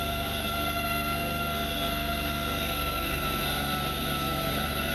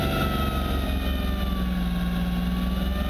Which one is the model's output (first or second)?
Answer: first